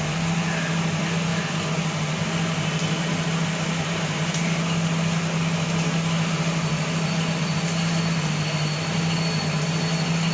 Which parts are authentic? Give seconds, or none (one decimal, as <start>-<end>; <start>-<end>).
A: 0.0-10.3